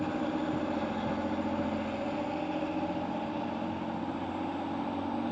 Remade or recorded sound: recorded